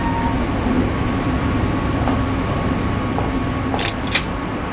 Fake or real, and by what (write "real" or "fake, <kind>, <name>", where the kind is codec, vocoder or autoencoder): real